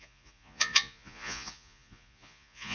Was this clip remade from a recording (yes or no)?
yes